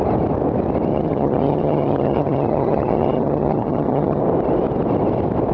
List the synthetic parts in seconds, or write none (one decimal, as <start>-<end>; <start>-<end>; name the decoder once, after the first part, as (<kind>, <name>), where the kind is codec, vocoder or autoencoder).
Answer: 0.9-4.2 (vocoder, HiFi-GAN)